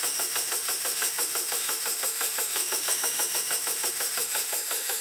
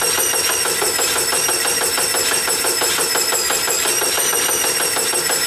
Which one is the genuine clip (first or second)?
second